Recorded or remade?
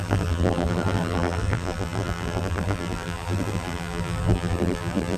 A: remade